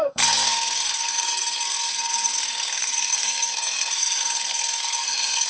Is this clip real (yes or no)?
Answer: no